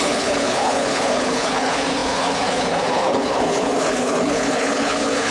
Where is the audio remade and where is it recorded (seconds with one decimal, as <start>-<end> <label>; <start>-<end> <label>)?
0.0-5.3 remade